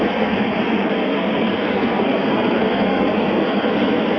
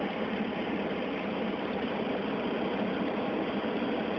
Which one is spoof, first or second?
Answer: first